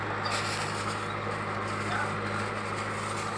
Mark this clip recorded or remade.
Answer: recorded